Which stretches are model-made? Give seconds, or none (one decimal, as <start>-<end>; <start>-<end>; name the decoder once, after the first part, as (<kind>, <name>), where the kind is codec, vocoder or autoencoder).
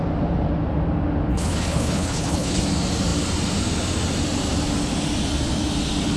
1.3-2.6 (codec, HILCodec)